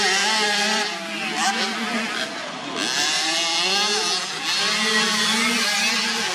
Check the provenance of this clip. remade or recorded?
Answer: recorded